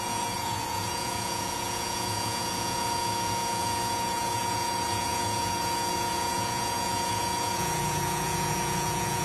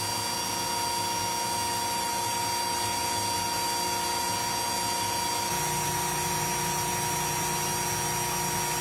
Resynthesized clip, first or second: first